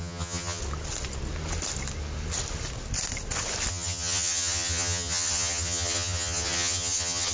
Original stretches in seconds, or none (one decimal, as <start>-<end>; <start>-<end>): 0.6-3.7